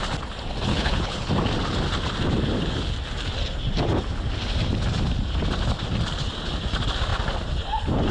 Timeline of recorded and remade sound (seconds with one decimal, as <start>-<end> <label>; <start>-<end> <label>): 0.0-0.7 recorded; 0.7-1.3 remade; 1.3-8.1 recorded